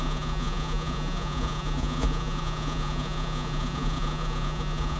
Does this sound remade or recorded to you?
remade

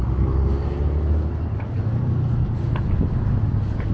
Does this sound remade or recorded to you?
recorded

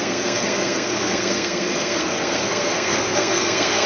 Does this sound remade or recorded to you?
remade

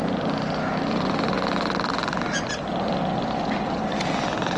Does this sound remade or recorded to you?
recorded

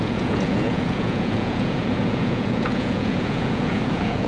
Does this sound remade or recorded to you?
remade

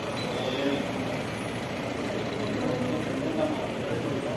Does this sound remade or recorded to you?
remade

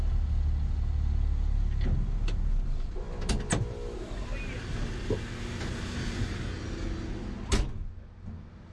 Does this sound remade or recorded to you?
recorded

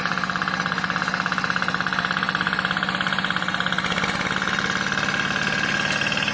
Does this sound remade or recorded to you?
recorded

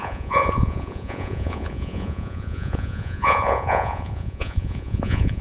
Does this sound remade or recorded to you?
remade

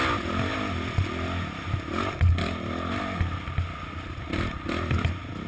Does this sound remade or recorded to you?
recorded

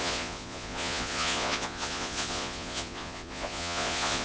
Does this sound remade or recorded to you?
remade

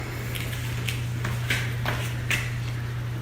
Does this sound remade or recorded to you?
recorded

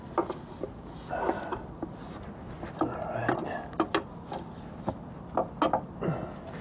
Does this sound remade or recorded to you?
recorded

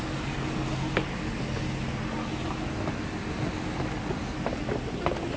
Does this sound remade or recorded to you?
recorded